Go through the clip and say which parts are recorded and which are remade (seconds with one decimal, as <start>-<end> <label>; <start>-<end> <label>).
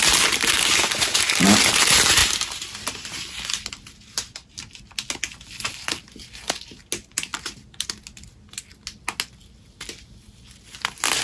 0.0-11.2 recorded